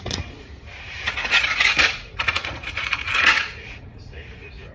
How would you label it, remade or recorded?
remade